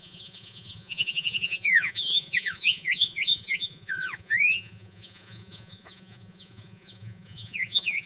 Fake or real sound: fake